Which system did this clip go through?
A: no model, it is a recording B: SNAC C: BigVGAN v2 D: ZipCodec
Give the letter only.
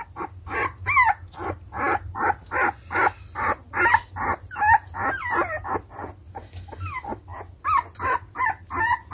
A